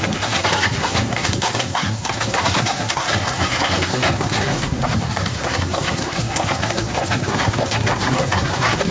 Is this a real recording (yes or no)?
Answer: no